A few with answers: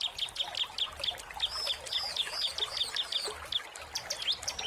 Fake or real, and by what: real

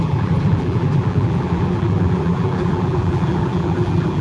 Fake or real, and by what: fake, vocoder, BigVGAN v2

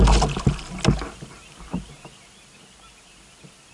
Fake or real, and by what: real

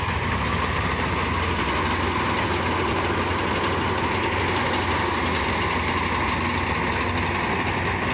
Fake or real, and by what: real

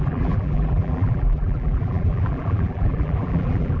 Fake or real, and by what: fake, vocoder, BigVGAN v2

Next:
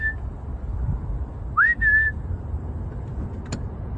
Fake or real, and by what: real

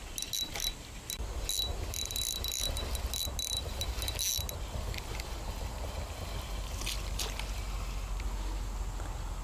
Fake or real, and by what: real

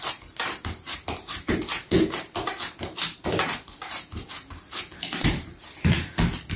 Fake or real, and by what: fake, vocoder, BigVGAN v2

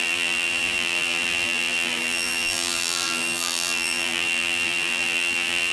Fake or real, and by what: fake, vocoder, BigVGAN v2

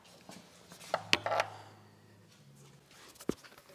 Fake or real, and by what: real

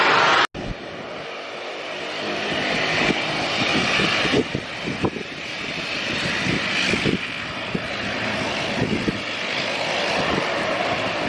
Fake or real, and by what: real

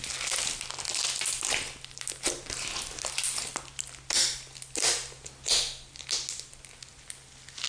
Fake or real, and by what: real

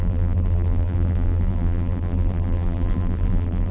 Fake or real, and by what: fake, vocoder, BigVGAN v2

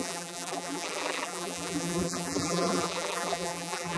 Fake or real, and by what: fake, vocoder, BigVGAN v2